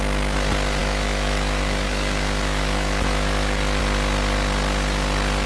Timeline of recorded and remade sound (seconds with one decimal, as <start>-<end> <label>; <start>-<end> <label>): 0.0-0.8 recorded; 0.8-3.8 remade; 3.8-5.5 recorded